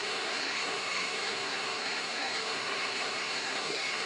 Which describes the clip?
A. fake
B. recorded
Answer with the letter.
A